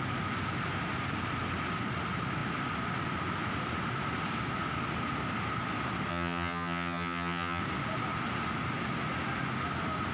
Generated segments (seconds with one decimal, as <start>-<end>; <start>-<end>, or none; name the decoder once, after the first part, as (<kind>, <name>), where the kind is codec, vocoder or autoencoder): 6.1-7.6 (vocoder, HiFi-GAN)